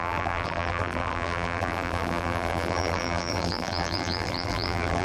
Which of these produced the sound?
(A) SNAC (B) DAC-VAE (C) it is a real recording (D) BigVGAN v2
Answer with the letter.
D